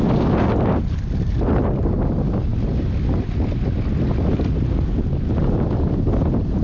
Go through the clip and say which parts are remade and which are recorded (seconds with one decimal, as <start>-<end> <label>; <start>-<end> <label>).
0.0-6.6 recorded